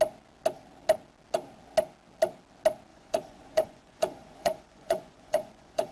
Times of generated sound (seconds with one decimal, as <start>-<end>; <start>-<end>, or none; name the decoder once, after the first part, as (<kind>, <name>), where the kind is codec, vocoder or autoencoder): 2.9-5.9 (vocoder, Vocos)